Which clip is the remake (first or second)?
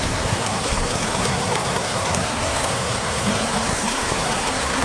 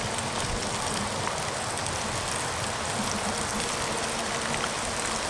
first